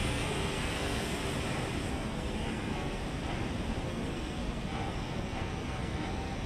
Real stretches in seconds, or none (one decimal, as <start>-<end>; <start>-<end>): 1.2-1.9; 3.0-3.8

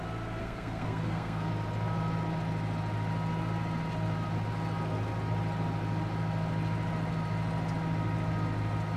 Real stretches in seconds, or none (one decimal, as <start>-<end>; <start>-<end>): 0.0-0.4; 1.5-9.0

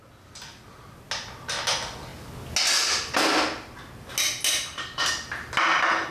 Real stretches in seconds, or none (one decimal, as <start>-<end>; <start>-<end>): 0.0-6.1

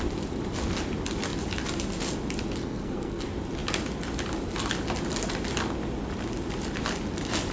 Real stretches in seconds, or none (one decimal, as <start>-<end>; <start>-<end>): 0.0-2.6; 3.2-7.5